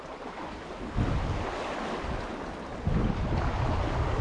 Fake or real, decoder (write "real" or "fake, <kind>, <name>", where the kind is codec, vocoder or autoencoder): real